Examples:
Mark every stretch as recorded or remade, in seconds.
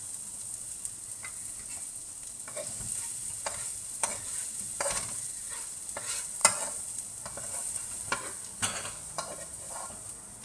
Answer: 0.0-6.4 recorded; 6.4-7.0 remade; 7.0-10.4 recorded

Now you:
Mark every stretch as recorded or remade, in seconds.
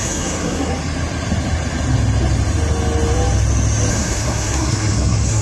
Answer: 0.0-0.7 remade; 0.7-3.9 recorded; 3.9-5.4 remade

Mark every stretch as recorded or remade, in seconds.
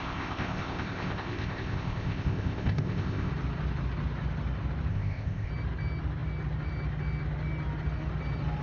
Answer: 0.0-3.3 remade; 3.3-4.9 recorded; 4.9-5.5 remade; 5.5-8.6 recorded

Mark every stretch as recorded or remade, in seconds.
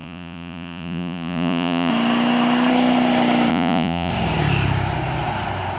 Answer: 0.0-1.9 remade; 1.9-3.5 recorded; 3.5-4.1 remade; 4.1-5.8 recorded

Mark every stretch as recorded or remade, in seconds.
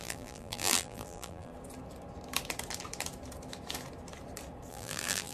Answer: 0.0-1.5 remade; 1.5-4.7 recorded; 4.7-5.3 remade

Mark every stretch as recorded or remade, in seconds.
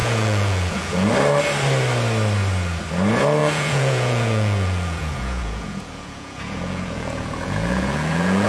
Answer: 0.0-1.1 remade; 1.1-3.4 recorded; 3.4-8.5 remade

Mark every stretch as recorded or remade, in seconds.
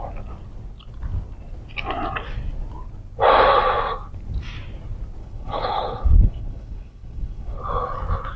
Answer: 0.0-5.2 recorded; 5.2-7.6 remade; 7.6-8.4 recorded